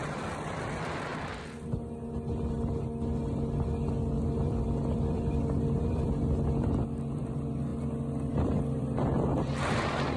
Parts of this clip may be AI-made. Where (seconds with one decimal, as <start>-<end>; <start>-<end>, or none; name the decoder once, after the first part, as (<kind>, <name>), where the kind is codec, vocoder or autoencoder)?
0.0-1.1 (vocoder, BigVGAN v2); 4.4-7.7; 8.3-10.2